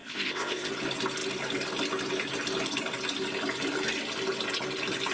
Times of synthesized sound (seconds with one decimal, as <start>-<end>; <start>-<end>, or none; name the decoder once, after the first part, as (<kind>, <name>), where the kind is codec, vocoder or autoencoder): 0.0-0.7 (codec, ZipCodec)